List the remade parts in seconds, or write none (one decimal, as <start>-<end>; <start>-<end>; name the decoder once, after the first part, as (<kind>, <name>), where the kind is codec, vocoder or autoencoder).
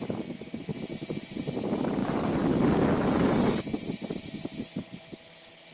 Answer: none